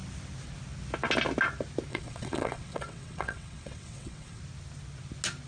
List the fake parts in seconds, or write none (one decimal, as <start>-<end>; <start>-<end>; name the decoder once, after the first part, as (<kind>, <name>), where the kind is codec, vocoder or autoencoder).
1.9-4.4 (vocoder, WaveNeXt)